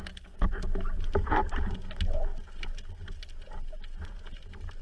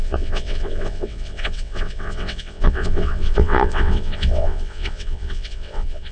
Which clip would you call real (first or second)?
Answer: first